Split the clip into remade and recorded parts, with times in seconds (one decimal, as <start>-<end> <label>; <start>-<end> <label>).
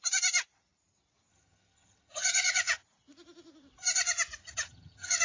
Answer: 0.0-1.3 recorded; 1.3-2.8 remade; 2.8-4.4 recorded; 4.4-5.2 remade